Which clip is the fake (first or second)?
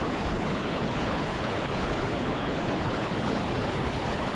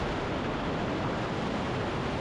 first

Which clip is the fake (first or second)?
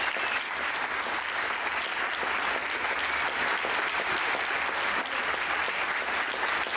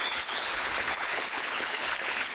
second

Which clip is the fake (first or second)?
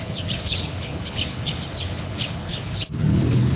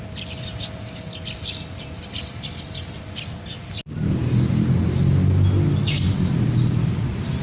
first